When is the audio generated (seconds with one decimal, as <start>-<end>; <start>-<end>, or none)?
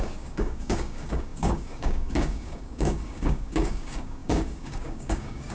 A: 0.0-5.5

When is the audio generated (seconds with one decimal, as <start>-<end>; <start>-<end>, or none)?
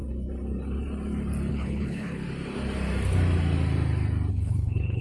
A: 1.5-2.2; 4.3-5.0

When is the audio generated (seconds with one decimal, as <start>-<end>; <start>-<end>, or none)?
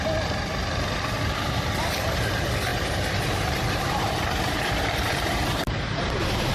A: 2.7-6.5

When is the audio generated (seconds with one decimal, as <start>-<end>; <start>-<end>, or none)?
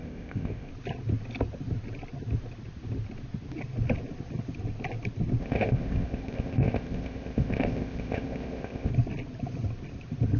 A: 0.0-0.7; 5.4-8.9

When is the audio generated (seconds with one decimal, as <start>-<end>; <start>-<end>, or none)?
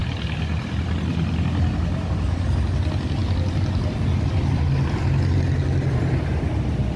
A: none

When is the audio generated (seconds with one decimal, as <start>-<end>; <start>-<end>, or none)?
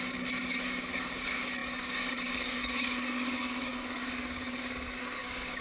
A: 0.0-5.6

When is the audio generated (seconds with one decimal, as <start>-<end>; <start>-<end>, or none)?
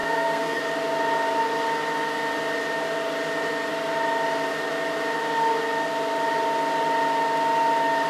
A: 0.0-0.6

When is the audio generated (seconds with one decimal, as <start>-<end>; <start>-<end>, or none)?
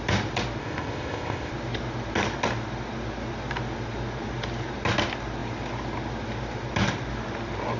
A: 0.6-1.5